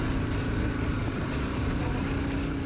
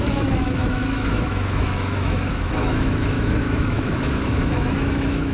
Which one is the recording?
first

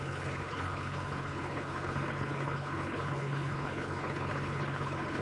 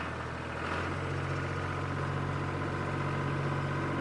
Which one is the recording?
second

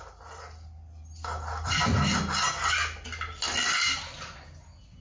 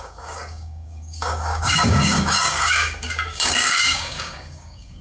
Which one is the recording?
first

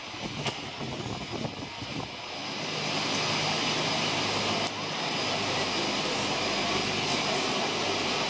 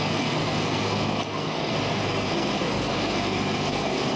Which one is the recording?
first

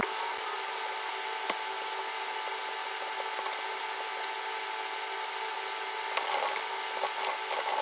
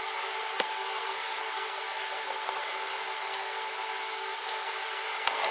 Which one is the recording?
first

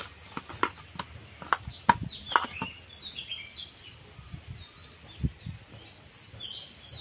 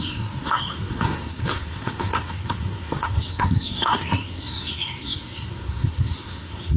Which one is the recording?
first